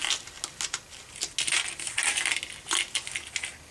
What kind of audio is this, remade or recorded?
recorded